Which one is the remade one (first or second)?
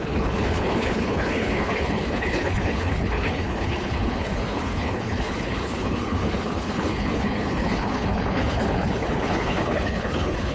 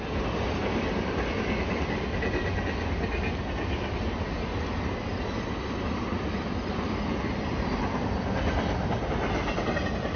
first